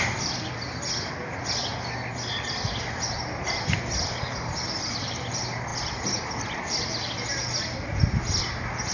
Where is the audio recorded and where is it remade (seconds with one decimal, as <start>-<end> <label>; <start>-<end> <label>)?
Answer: 0.0-8.9 remade